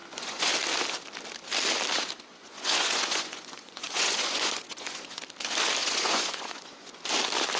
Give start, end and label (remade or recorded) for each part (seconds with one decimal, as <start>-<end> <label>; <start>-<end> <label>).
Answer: 0.0-0.5 remade; 0.5-2.3 recorded; 2.3-5.2 remade; 5.2-5.8 recorded; 5.8-7.0 remade; 7.0-7.6 recorded